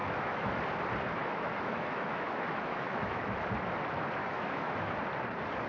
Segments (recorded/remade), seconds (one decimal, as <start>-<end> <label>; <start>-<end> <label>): 0.0-0.5 remade; 0.5-1.2 recorded; 1.2-3.4 remade; 3.4-4.2 recorded; 4.2-4.9 remade; 4.9-5.7 recorded

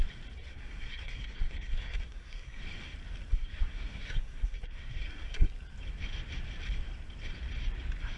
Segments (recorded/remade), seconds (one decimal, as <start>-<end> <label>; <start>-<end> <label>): 0.0-0.4 recorded; 0.4-2.6 remade; 2.6-3.3 recorded; 3.3-5.5 remade; 5.5-8.2 recorded

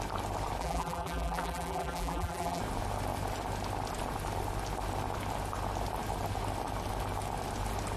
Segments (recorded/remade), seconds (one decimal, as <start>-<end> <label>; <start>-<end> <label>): 0.0-0.6 recorded; 0.6-2.6 remade; 2.6-8.0 recorded

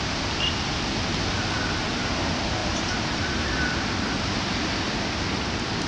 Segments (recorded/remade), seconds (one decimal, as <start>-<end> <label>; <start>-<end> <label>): 0.0-5.9 recorded